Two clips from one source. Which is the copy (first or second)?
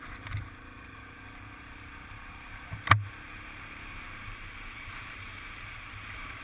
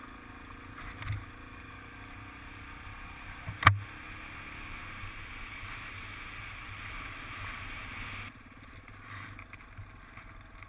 first